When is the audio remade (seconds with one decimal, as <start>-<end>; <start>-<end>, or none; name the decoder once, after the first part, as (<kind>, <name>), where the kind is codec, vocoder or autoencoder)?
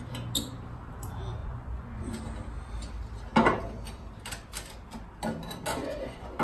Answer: 1.4-2.1 (vocoder, Vocos); 5.7-6.4